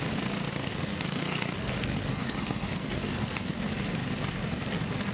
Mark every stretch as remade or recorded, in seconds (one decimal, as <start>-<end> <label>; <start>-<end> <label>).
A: 0.0-0.5 recorded; 0.5-3.6 remade; 3.6-5.1 recorded